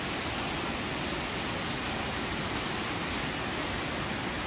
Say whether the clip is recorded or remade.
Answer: recorded